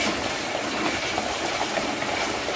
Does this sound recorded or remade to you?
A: remade